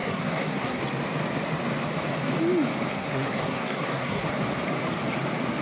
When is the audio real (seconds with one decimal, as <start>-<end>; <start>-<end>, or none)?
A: 0.8-2.9; 4.3-5.6